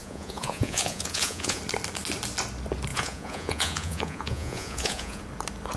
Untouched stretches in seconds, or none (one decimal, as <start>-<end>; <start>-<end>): 1.6-2.9; 5.2-5.8